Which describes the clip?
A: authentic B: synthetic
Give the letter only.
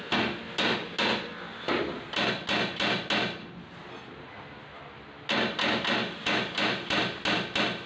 A